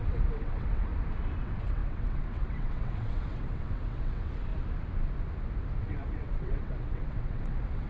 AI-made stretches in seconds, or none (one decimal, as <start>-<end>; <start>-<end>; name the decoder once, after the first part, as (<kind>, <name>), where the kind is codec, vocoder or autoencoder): 0.0-0.9 (vocoder, WaveNeXt); 1.4-4.5; 5.8-7.9